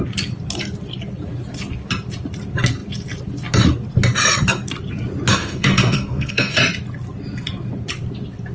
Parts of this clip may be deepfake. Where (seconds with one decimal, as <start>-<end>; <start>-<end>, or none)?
5.3-6.6